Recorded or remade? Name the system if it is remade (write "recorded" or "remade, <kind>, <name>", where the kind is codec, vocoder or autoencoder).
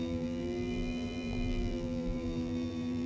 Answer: remade, vocoder, BigVGAN v2